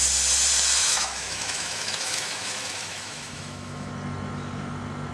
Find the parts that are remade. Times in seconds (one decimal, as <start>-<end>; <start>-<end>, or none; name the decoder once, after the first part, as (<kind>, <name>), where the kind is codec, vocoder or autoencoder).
0.8-3.9 (autoencoder, DAC-VAE)